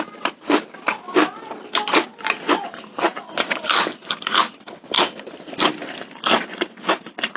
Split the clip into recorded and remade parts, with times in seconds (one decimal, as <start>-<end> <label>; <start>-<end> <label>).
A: 0.0-7.4 recorded